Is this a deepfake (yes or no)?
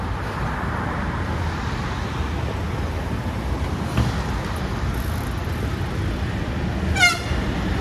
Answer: no